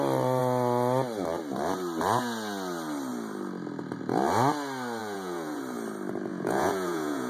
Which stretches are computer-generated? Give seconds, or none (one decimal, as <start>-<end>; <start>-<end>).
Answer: 5.0-5.6; 6.3-7.3